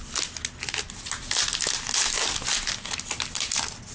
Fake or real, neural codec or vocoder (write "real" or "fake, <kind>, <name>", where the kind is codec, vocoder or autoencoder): real